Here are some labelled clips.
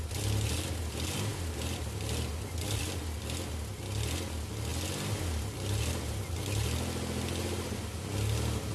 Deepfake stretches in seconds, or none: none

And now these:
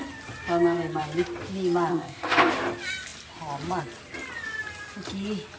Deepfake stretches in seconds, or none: 1.9-2.5

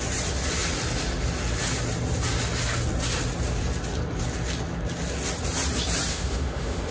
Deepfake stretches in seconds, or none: 6.1-6.9

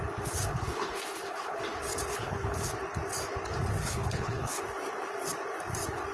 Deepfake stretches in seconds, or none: 0.5-1.6; 2.1-2.7; 3.8-4.6

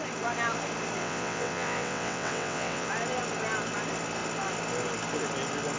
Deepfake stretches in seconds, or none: 1.0-2.9